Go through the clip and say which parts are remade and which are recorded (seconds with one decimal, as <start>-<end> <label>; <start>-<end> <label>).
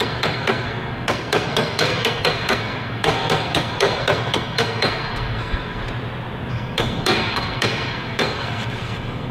0.0-5.8 remade; 5.8-6.5 recorded; 6.5-9.3 remade